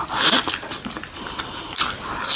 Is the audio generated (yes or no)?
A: no